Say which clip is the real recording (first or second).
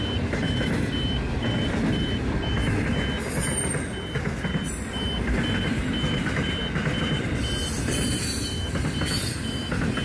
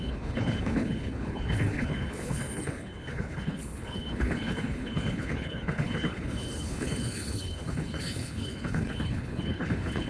first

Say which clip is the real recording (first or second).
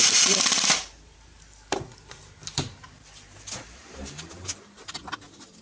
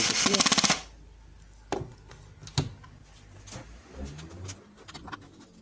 second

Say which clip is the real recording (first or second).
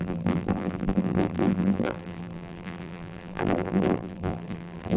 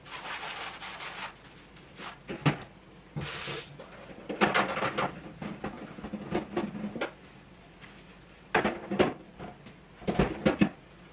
second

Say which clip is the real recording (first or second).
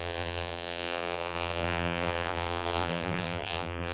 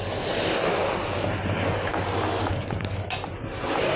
second